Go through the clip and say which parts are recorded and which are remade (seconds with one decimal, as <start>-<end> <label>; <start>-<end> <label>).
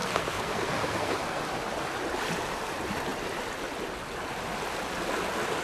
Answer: 0.0-1.4 remade; 1.4-5.6 recorded